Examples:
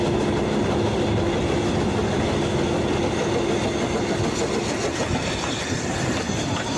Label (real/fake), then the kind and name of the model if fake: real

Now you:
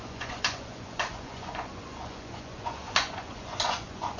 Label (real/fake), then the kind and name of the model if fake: fake, vocoder, Vocos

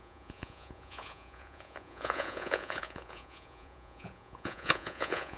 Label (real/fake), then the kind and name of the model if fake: fake, vocoder, Vocos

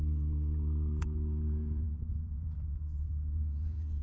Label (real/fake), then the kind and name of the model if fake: fake, vocoder, Vocos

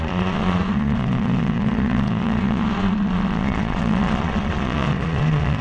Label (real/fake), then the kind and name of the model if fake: fake, vocoder, Vocos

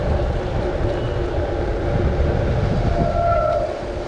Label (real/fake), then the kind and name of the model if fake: real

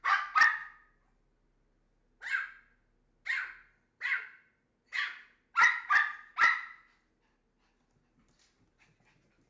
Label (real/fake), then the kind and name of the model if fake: real